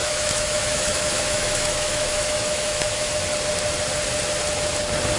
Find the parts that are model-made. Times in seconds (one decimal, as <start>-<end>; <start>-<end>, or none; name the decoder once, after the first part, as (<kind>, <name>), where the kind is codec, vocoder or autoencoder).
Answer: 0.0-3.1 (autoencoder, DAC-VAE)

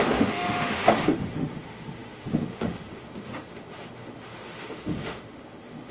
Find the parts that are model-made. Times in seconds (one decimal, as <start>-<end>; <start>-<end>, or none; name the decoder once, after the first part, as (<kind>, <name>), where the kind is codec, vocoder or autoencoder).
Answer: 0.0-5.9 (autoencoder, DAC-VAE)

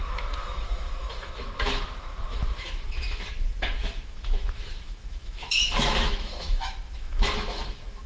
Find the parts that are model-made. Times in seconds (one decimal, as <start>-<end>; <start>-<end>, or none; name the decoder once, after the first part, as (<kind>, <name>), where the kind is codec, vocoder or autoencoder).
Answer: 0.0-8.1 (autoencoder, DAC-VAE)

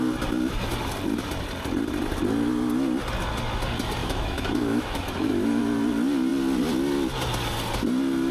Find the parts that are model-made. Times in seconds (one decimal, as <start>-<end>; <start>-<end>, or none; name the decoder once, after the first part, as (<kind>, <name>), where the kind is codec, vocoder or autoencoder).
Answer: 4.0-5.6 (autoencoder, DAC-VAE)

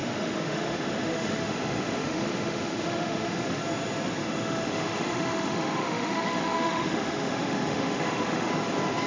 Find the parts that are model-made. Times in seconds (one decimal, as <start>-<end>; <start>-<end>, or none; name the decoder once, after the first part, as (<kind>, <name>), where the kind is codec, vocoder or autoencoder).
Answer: 0.0-3.6 (autoencoder, DAC-VAE); 4.2-8.5

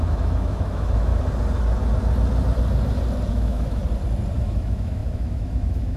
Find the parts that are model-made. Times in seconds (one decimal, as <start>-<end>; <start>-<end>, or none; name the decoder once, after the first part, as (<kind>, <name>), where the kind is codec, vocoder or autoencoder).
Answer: 0.0-1.1 (autoencoder, DAC-VAE); 3.3-3.8; 4.4-6.0

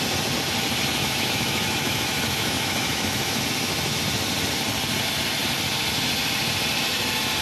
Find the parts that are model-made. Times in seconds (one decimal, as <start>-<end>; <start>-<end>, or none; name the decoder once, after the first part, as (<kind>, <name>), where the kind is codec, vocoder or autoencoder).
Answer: 1.0-3.4 (autoencoder, DAC-VAE)